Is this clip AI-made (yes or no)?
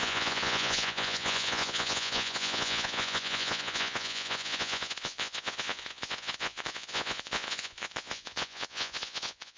yes